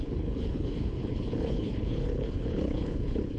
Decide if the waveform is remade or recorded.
remade